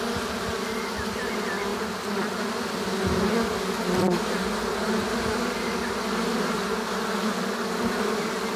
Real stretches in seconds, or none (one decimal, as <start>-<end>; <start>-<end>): 0.0-8.6